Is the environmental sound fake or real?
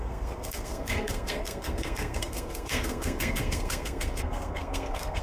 fake